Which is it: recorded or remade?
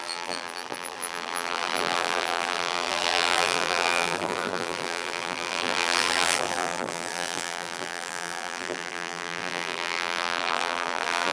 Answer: remade